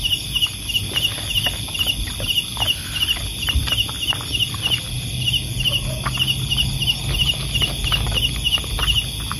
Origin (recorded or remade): recorded